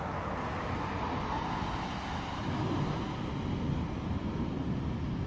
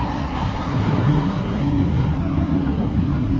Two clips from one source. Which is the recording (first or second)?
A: first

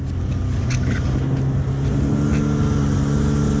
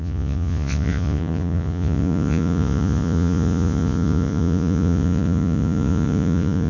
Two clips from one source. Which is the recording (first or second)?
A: first